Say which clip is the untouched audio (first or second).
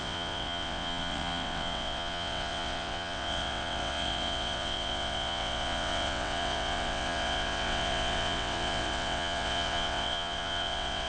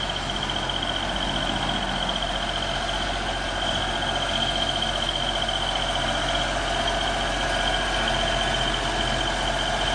second